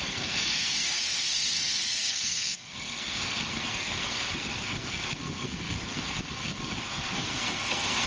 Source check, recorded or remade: remade